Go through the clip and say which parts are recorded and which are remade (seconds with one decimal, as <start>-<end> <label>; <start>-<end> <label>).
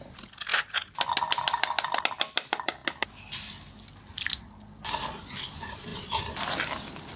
0.0-0.5 remade; 0.5-2.0 recorded; 2.0-2.8 remade; 2.8-4.2 recorded; 4.2-7.2 remade